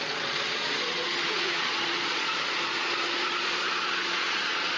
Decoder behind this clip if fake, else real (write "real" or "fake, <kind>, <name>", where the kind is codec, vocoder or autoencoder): fake, vocoder, Vocos